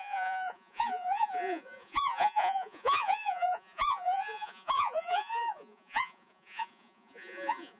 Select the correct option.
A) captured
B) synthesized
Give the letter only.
B